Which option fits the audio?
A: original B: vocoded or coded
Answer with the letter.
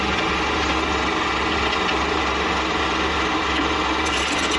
A